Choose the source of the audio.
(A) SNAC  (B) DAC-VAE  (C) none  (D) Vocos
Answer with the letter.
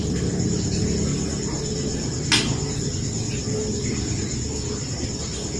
C